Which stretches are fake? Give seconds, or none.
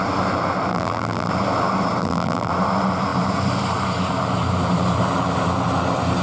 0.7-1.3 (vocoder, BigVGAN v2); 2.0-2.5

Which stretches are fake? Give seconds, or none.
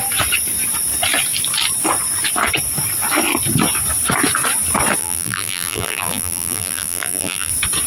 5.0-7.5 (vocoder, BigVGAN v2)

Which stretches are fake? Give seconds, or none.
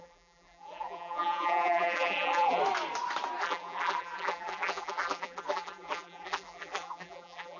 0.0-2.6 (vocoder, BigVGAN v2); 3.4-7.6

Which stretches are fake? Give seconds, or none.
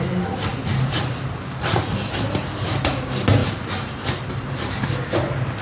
0.5-2.4 (vocoder, BigVGAN v2); 3.4-5.6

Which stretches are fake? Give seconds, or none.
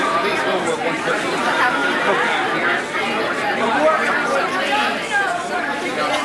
0.0-1.8 (vocoder, BigVGAN v2); 5.5-6.2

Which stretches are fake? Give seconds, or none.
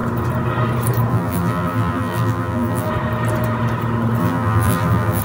1.1-2.9 (vocoder, BigVGAN v2); 4.2-5.2